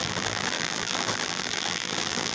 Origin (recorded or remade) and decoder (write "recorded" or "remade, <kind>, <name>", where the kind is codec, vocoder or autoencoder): remade, vocoder, BigVGAN v2